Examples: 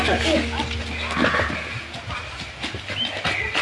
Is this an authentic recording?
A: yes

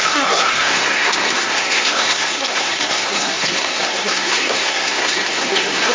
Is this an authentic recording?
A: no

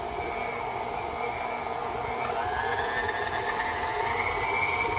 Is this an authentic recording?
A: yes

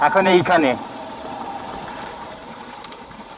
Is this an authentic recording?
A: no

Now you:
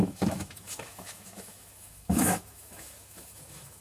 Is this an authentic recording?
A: no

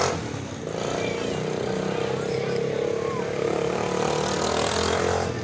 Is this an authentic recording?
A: yes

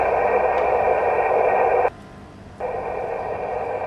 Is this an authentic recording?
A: yes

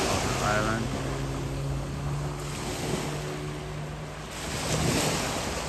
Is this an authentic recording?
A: yes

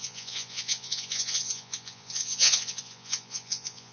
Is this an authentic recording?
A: no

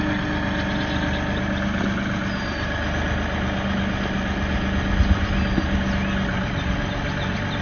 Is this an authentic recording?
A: yes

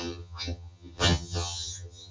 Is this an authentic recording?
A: no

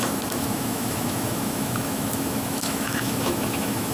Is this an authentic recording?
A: no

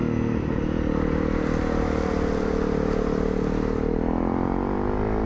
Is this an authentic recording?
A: yes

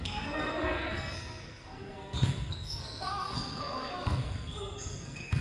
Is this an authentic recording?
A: no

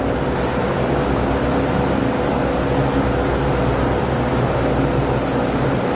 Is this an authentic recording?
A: yes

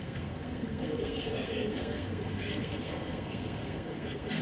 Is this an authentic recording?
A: no